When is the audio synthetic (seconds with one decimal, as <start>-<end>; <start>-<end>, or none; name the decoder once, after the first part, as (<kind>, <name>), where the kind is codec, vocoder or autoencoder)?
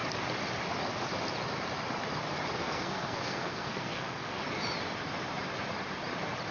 2.6-4.4 (codec, SNAC)